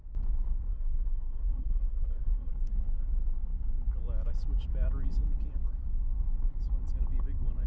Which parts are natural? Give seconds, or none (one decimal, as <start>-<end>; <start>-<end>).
0.0-0.7; 2.5-7.7